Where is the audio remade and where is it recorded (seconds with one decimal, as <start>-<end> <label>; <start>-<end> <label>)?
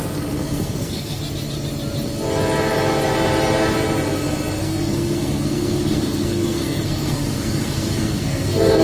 0.0-1.2 remade; 1.2-4.6 recorded; 4.6-8.8 remade